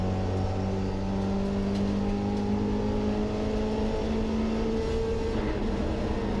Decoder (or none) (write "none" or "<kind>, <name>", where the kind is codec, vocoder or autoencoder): none